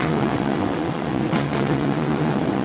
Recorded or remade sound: remade